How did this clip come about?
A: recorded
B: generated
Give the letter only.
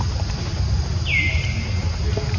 A